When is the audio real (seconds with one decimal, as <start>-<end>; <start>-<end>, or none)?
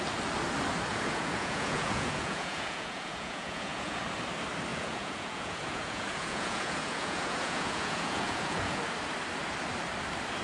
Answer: 0.0-0.9; 4.0-4.7; 8.8-10.4